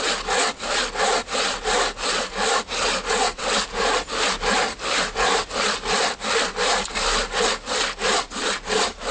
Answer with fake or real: real